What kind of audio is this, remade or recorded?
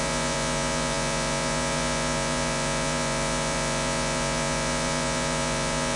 remade